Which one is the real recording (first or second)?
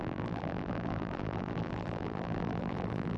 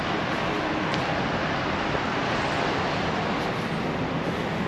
second